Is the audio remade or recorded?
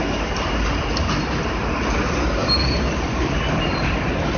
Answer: recorded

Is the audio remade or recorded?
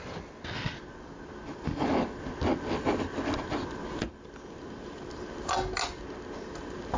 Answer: recorded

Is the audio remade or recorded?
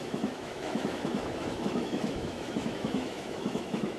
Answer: remade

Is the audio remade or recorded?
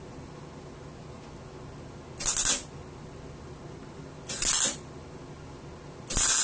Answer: recorded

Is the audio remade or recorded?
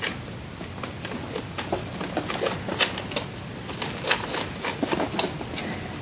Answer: recorded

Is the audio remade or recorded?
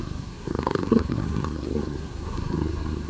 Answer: remade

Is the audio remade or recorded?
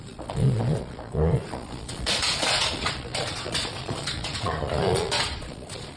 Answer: remade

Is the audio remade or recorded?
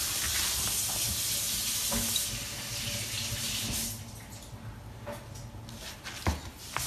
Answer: recorded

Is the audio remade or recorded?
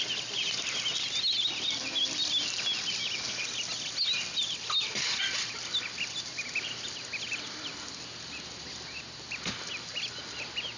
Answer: recorded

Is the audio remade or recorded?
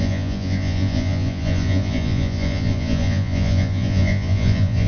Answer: remade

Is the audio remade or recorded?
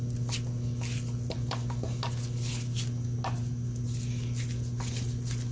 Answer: recorded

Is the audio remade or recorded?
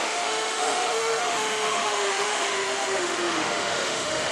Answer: remade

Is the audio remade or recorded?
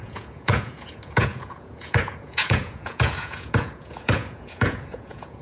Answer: remade